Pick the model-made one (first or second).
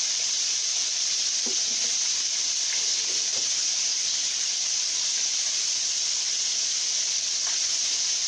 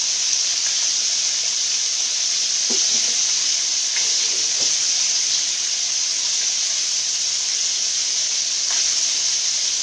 first